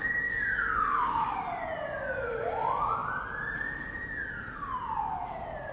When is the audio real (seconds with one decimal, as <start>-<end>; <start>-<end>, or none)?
1.4-5.7